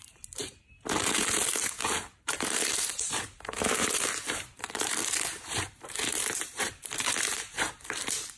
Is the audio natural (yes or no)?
no